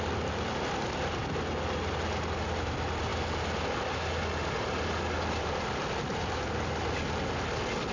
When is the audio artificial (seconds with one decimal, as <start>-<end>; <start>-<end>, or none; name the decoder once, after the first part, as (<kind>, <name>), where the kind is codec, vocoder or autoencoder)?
none